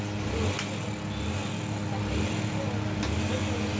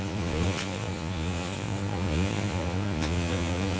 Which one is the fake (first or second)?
second